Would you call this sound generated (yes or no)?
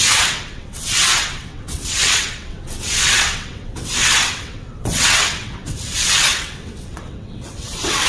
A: yes